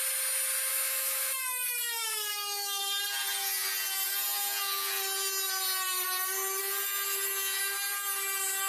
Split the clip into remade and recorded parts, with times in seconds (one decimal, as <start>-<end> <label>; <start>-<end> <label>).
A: 0.0-0.7 recorded; 0.7-3.0 remade; 3.0-8.7 recorded

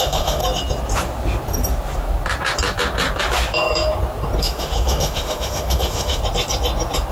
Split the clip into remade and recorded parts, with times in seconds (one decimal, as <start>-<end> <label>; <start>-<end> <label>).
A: 0.0-0.4 remade; 0.4-4.4 recorded; 4.4-6.2 remade; 6.2-7.1 recorded